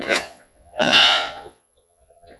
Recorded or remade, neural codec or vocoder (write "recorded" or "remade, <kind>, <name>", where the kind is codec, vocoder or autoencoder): remade, vocoder, Vocos